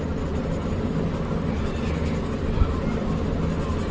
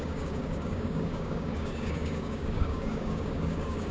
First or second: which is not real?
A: second